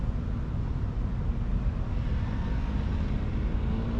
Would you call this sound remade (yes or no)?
no